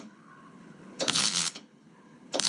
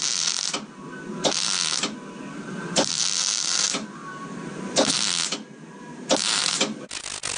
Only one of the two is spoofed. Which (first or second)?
first